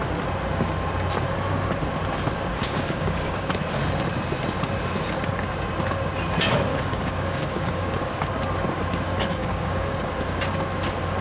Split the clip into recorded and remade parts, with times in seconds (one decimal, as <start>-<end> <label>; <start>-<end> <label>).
0.0-2.5 recorded; 2.5-3.5 remade; 3.5-6.7 recorded; 6.7-8.1 remade; 8.1-9.4 recorded; 9.4-10.1 remade; 10.1-11.2 recorded